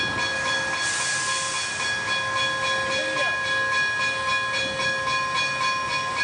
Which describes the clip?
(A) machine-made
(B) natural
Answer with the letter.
B